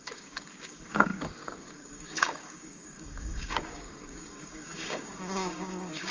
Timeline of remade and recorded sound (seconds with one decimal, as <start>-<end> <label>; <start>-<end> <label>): 0.0-6.1 remade